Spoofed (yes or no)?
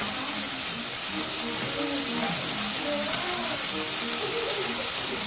no